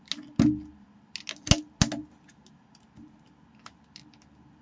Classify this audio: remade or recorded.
recorded